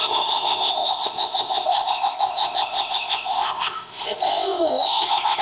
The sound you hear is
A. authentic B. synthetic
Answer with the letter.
B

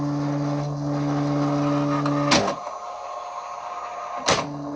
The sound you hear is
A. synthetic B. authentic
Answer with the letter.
B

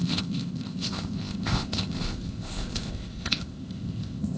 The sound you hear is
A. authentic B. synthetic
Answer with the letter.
B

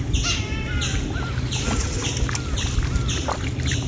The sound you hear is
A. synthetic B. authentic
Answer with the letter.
B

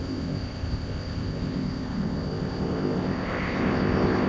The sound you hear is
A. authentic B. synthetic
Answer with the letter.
B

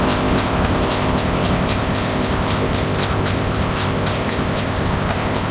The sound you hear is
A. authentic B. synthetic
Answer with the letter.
B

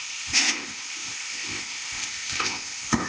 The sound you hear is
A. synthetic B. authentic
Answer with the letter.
A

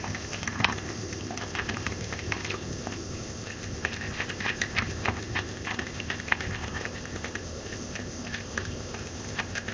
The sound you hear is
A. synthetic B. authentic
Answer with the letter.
A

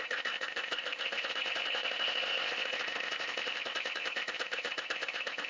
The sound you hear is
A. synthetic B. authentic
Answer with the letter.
A